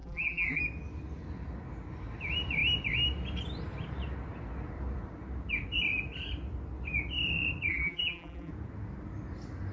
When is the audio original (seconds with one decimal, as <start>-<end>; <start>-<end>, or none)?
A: 0.6-7.7; 8.5-9.7